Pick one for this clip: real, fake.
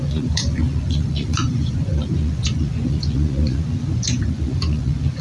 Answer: fake